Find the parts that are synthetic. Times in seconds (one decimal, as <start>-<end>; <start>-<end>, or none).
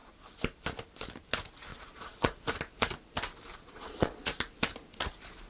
1.7-2.6; 3.5-4.4